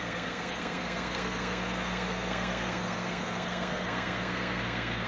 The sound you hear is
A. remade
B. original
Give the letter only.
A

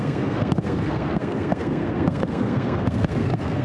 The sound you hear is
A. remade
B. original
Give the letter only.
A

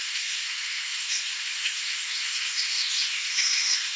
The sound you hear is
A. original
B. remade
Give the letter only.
B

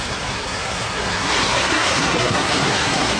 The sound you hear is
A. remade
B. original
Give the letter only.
A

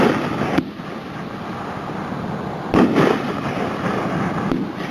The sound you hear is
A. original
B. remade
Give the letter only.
A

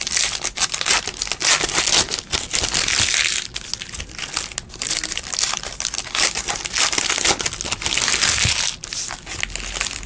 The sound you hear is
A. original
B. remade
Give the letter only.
A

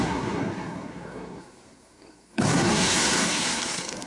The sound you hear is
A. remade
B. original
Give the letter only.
A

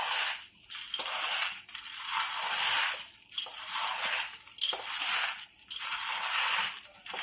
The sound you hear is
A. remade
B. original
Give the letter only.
B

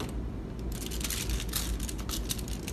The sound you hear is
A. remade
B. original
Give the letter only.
B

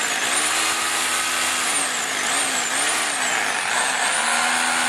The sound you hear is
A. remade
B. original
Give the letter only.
B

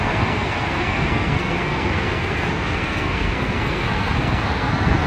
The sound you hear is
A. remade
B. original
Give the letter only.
A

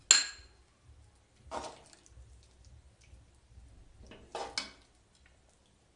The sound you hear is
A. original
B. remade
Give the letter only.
A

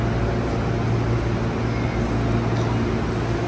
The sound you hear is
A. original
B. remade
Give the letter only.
A